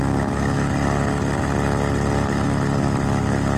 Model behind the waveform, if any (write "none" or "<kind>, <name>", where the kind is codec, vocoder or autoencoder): none